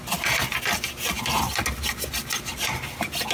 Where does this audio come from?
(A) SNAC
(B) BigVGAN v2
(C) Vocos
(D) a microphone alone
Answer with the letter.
D